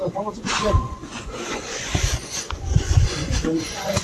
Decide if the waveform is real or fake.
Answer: fake